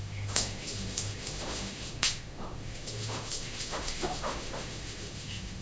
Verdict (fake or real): fake